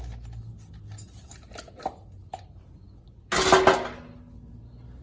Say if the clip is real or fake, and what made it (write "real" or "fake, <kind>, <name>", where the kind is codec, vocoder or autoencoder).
real